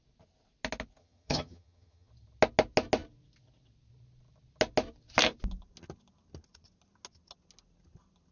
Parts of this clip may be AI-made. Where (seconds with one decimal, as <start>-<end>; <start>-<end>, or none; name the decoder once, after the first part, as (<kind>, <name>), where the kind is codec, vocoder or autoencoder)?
1.0-2.1 (vocoder, HiFi-GAN)